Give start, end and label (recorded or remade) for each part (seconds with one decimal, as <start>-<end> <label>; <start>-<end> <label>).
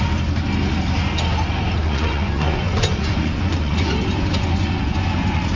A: 0.0-1.8 recorded; 1.8-5.6 remade